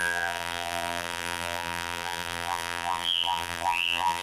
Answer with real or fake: fake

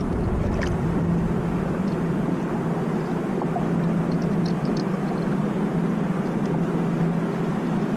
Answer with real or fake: real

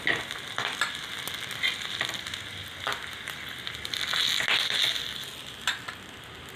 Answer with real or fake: real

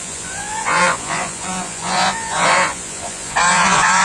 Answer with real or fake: fake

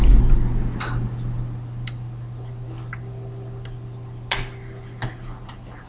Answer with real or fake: real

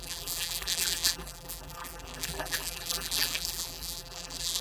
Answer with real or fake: fake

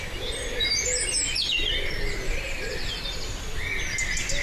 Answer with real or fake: real